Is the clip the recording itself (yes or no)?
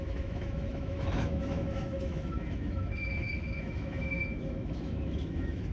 no